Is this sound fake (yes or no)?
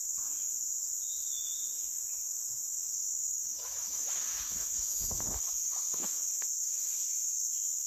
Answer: yes